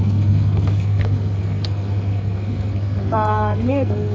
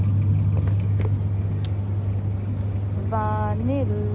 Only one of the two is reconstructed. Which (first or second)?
first